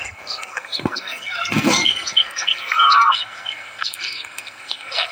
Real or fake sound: fake